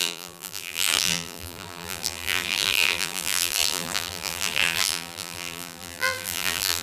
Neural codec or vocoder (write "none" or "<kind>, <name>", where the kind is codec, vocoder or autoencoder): vocoder, BigVGAN v2